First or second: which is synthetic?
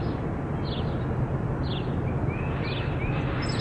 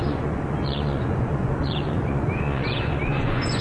second